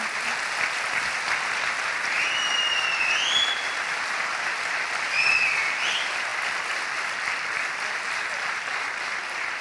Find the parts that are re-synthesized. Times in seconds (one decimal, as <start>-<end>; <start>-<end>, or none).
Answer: none